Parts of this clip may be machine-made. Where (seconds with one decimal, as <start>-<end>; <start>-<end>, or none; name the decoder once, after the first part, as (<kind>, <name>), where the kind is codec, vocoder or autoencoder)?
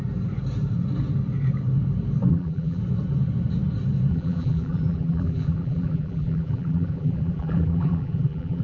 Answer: 2.3-2.8 (vocoder, BigVGAN v2); 4.1-8.6